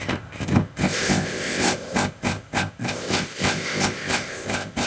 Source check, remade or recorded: remade